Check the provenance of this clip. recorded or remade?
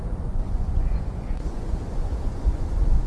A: remade